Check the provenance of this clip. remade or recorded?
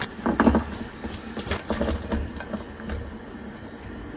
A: recorded